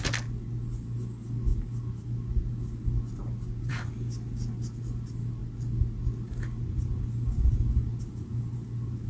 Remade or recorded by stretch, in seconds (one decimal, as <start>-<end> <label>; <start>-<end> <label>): 0.0-9.1 recorded

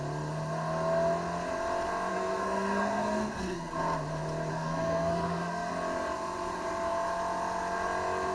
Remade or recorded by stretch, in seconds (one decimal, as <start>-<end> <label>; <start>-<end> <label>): 0.0-2.1 recorded; 2.1-3.7 remade; 3.7-4.5 recorded; 4.5-5.7 remade; 5.7-8.3 recorded

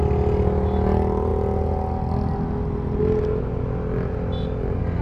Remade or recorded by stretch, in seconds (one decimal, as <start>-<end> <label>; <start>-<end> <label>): 0.0-5.0 recorded

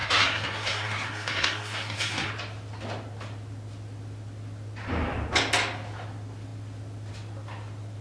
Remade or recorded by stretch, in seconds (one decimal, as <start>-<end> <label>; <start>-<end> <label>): 0.0-2.3 remade; 2.3-8.0 recorded

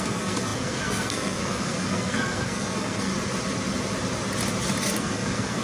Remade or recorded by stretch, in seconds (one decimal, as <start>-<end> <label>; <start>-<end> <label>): 0.0-3.1 remade; 3.1-4.8 recorded; 4.8-5.6 remade

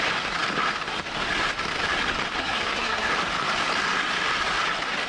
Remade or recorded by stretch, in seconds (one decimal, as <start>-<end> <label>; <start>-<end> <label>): 0.0-2.4 recorded; 2.4-3.1 remade; 3.1-5.1 recorded

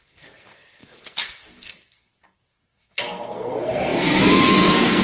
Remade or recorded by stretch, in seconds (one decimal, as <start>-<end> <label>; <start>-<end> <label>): 0.0-5.0 remade